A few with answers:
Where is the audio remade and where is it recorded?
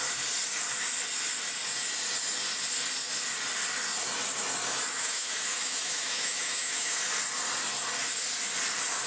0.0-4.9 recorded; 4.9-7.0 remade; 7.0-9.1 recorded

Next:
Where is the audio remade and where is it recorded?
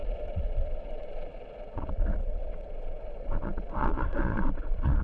0.0-5.0 remade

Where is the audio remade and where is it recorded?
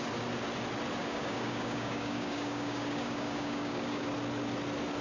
0.0-1.0 recorded; 1.0-4.0 remade; 4.0-5.0 recorded